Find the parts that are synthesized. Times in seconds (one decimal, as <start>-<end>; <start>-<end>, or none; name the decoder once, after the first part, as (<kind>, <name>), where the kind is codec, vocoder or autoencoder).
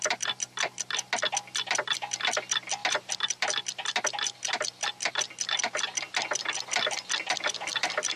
none